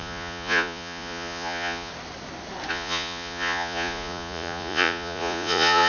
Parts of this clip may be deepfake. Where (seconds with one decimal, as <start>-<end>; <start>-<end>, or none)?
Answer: 0.0-1.9; 2.7-5.9